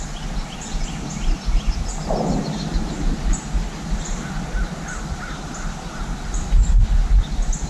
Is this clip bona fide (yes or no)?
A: yes